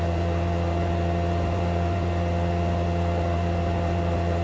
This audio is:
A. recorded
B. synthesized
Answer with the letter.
A